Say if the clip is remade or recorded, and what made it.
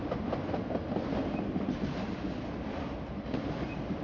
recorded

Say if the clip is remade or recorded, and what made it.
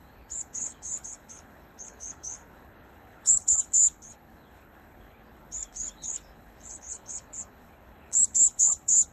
remade, codec, HILCodec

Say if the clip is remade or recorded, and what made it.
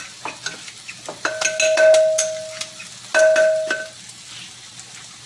recorded